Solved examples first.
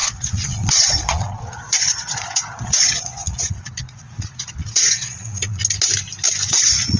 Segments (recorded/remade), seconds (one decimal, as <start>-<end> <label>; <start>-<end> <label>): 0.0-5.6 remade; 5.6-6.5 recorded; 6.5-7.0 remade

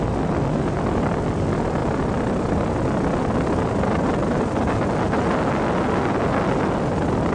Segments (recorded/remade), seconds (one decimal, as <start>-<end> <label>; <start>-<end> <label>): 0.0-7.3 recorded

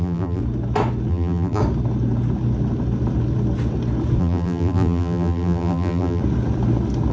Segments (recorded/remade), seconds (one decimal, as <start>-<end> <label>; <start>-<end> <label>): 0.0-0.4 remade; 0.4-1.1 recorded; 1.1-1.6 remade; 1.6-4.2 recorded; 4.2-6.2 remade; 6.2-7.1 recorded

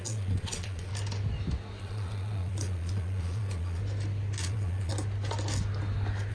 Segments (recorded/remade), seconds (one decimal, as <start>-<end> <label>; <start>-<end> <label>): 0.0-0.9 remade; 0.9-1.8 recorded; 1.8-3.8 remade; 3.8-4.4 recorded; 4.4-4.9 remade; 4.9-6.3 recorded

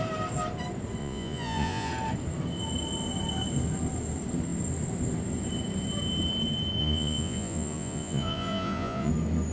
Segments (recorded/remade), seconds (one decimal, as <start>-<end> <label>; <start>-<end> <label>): 0.0-1.0 recorded; 1.0-1.9 remade; 1.9-6.8 recorded; 6.8-9.1 remade; 9.1-9.5 recorded

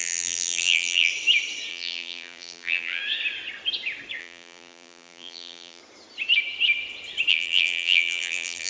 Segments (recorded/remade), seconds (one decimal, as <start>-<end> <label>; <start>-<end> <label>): 0.0-1.1 remade; 1.1-1.7 recorded; 1.7-3.0 remade; 3.0-4.2 recorded; 4.2-5.8 remade; 5.8-7.3 recorded; 7.3-8.7 remade

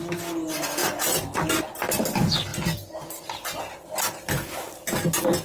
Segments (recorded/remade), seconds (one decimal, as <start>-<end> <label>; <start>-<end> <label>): 0.0-5.4 recorded